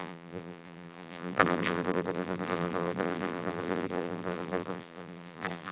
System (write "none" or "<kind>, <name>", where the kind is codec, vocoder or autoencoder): vocoder, BigVGAN v2